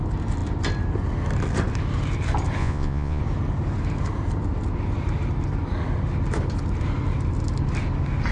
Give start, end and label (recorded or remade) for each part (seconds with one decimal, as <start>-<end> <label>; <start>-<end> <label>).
0.0-2.6 recorded; 2.6-3.2 remade; 3.2-8.3 recorded